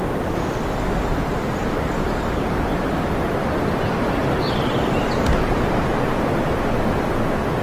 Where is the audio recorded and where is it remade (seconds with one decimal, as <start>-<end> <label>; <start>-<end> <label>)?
0.0-1.1 recorded; 1.1-2.4 remade; 2.4-4.2 recorded; 4.2-5.9 remade; 5.9-7.6 recorded